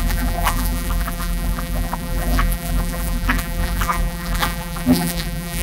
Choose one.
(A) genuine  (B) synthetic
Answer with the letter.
B